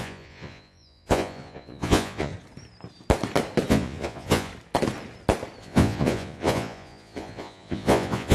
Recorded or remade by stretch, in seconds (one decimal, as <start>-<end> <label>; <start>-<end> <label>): 0.0-2.3 remade; 2.3-3.7 recorded; 3.7-4.5 remade; 4.5-5.6 recorded; 5.6-8.3 remade